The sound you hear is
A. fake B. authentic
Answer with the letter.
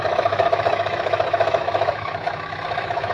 A